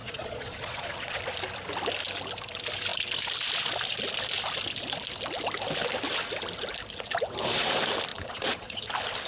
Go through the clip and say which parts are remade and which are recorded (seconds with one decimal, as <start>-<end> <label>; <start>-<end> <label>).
0.0-1.2 remade; 1.2-8.1 recorded; 8.1-8.9 remade; 8.9-9.3 recorded